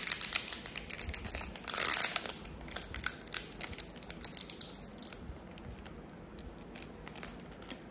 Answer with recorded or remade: recorded